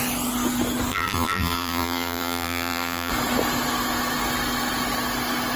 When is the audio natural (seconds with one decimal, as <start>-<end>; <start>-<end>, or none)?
0.0-0.9; 3.1-5.6